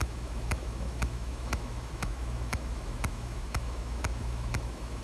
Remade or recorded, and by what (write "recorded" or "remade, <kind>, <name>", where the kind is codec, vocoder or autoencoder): remade, autoencoder, DAC-VAE